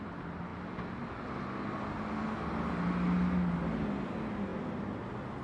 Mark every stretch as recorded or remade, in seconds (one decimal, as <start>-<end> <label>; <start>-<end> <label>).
0.0-5.4 recorded

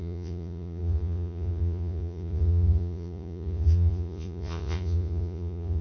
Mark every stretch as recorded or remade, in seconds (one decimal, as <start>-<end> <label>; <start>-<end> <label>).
0.0-5.8 remade

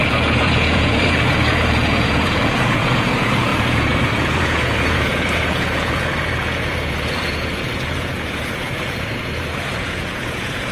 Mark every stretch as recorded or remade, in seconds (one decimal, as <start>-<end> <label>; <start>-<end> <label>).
0.0-10.7 remade

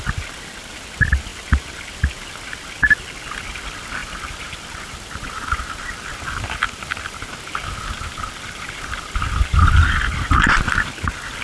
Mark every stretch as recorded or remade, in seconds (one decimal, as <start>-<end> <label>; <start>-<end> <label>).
0.0-11.4 recorded

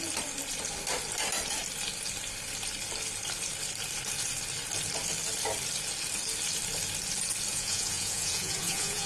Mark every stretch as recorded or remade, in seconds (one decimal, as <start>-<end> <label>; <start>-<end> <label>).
0.0-7.5 recorded; 7.5-9.1 remade

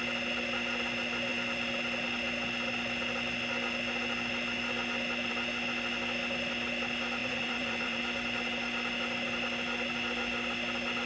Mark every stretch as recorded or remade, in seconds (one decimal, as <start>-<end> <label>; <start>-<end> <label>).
0.0-7.2 recorded; 7.2-8.0 remade; 8.0-11.1 recorded

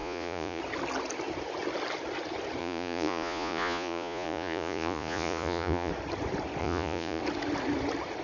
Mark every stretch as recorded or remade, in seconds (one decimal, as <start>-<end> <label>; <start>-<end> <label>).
0.0-0.6 remade; 0.6-2.6 recorded; 2.6-5.9 remade; 5.9-6.6 recorded; 6.6-7.2 remade; 7.2-8.2 recorded